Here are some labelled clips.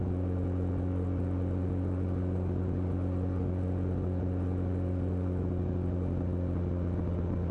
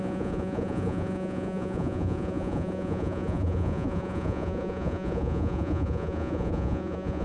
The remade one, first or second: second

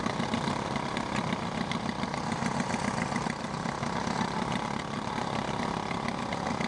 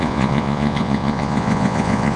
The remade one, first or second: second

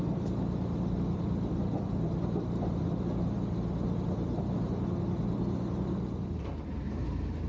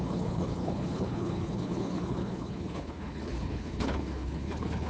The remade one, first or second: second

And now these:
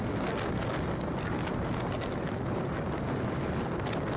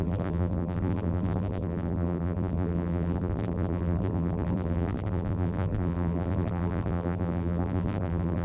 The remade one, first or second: second